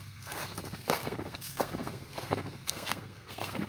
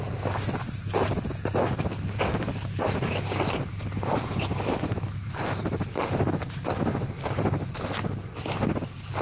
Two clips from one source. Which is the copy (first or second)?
first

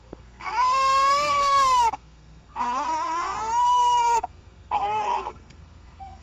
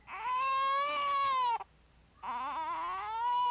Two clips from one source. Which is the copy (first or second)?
first